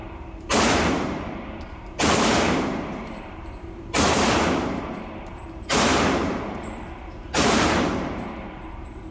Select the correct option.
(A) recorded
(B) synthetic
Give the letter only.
B